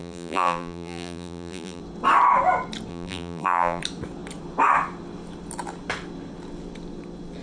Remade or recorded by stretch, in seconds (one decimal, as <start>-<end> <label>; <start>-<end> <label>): 0.0-1.8 remade; 1.8-2.9 recorded; 2.9-3.8 remade; 3.8-7.4 recorded